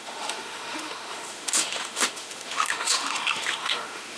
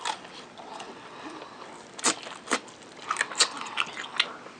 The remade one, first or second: first